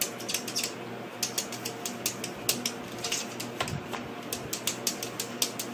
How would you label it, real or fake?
real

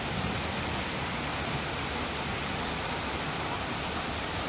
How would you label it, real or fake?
real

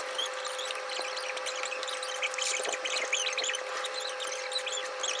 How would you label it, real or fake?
real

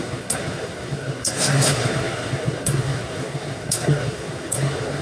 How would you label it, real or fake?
fake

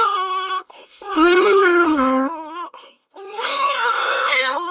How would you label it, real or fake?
fake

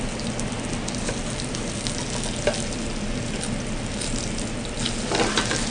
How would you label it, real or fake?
real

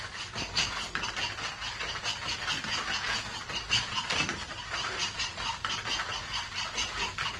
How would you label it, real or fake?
real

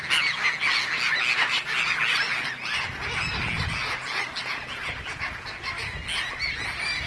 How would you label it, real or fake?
real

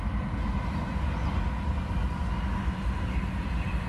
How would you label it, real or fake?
real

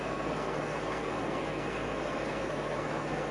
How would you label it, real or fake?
fake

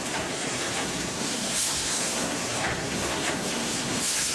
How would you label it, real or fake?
fake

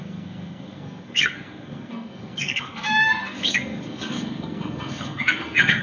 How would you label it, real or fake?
fake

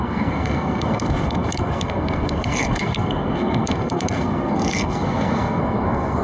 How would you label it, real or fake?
fake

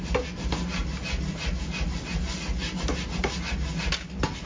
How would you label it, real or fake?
real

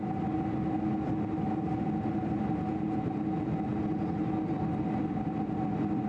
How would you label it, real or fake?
real